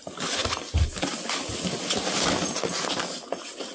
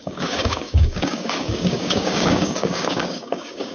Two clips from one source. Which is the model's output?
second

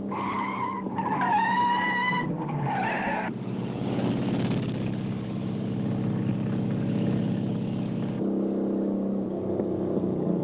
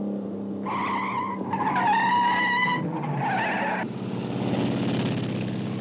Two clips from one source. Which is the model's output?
first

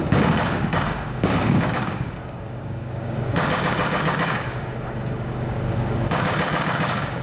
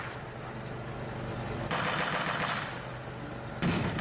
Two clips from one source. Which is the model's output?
first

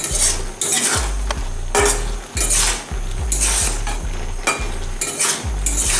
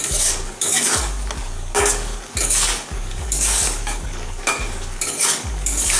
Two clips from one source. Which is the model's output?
second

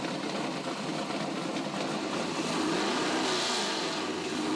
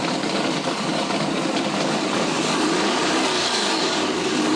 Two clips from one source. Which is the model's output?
second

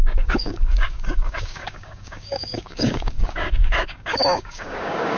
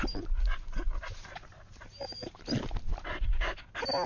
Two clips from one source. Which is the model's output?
first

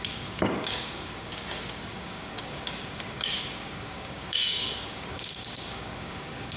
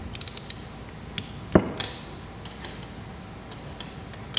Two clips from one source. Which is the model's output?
first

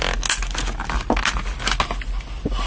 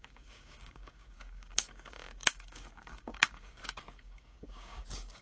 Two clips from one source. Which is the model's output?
second